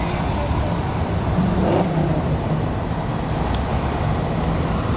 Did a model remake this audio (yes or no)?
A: no